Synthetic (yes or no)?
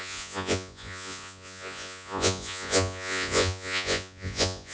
yes